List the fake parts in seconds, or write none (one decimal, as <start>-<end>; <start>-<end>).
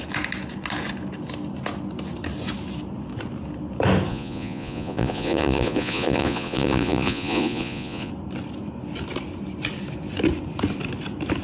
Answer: 4.1-8.1